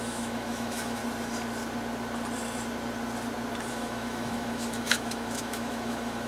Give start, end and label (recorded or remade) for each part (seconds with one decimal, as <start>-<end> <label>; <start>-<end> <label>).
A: 0.0-1.0 remade; 1.0-3.7 recorded; 3.7-6.3 remade